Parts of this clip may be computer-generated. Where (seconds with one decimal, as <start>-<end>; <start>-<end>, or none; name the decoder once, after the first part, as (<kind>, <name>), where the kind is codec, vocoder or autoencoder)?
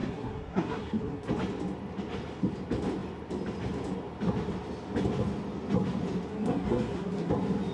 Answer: 0.0-1.3 (codec, SNAC); 6.3-7.3